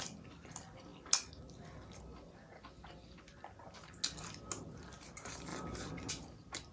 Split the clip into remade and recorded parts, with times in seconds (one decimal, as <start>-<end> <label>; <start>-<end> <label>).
0.0-6.7 recorded